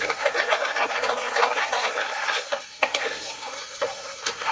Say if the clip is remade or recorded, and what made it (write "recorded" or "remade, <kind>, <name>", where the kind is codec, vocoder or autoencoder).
remade, codec, SNAC